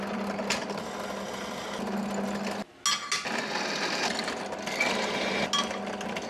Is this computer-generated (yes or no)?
no